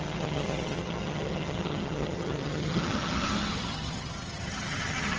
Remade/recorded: remade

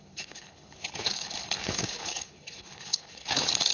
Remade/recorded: remade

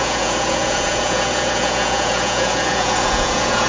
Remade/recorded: remade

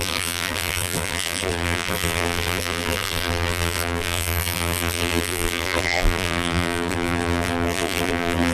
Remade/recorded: remade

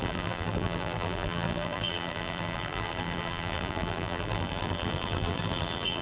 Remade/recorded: remade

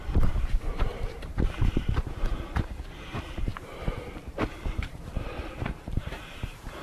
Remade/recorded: remade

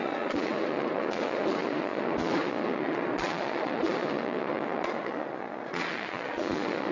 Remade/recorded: remade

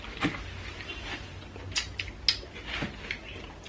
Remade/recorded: recorded